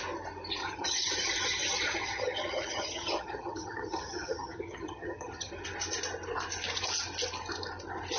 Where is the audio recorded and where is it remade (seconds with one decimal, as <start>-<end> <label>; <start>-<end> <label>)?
0.0-0.6 recorded; 0.6-1.1 remade; 1.1-2.0 recorded; 2.0-5.5 remade; 5.5-8.2 recorded